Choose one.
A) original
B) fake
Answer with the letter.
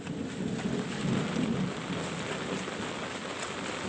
A